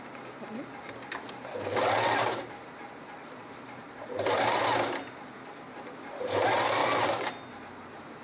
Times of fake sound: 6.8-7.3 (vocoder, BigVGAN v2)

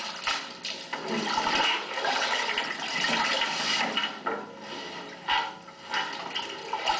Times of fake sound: none